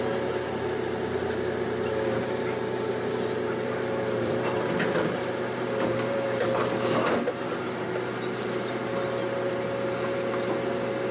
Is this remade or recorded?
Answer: remade